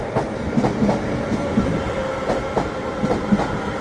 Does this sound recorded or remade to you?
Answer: recorded